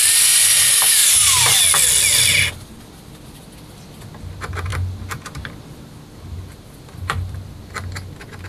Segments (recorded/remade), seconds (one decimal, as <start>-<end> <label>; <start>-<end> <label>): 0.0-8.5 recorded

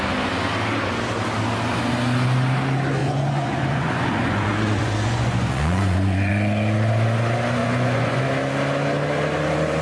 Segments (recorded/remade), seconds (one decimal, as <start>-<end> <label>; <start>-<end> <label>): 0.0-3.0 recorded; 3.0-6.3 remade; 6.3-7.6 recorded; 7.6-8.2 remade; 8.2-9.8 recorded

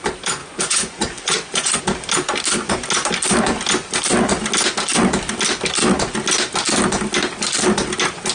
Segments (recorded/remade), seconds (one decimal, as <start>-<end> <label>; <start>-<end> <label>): 0.0-0.4 recorded; 0.4-1.8 remade; 1.8-8.3 recorded

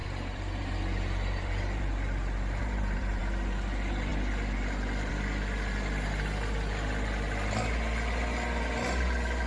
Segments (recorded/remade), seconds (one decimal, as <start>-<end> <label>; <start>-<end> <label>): 0.0-1.8 remade; 1.8-2.6 recorded; 2.6-3.2 remade; 3.2-9.5 recorded